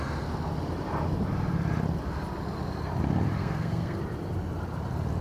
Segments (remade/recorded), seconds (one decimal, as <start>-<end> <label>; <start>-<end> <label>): 0.0-3.4 recorded; 3.4-4.0 remade; 4.0-5.2 recorded